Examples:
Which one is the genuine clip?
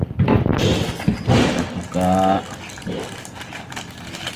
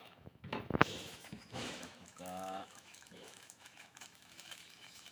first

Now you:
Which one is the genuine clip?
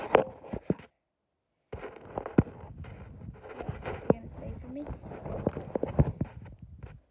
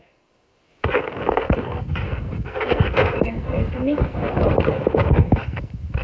first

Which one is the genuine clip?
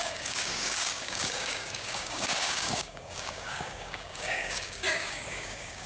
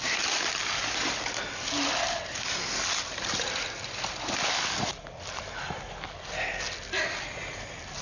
second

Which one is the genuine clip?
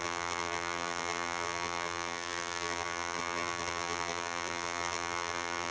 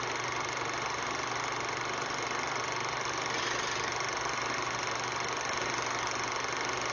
second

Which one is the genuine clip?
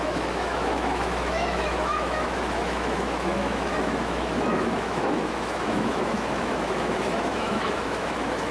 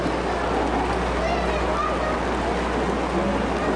second